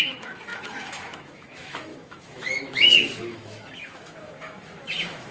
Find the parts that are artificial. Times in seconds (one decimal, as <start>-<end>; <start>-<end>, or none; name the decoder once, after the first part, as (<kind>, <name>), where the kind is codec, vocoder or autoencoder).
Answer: 0.0-5.3 (autoencoder, DAC-VAE)